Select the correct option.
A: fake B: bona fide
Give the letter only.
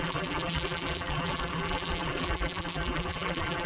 A